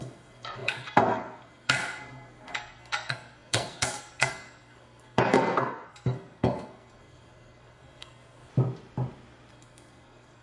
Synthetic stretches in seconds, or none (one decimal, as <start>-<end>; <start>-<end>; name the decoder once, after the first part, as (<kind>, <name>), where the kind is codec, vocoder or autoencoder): 0.0-8.5 (codec, SNAC); 9.5-10.4